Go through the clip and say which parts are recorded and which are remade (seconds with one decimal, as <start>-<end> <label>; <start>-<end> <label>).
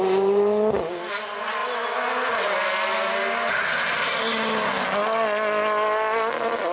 0.0-6.7 recorded